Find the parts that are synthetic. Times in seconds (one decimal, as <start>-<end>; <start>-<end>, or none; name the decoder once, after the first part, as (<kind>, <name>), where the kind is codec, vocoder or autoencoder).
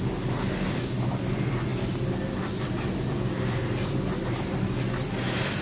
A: none